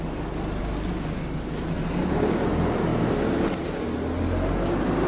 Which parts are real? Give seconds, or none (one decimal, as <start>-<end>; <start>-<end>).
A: 0.0-0.6; 1.6-2.0; 2.5-5.1